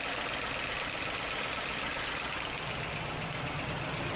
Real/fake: real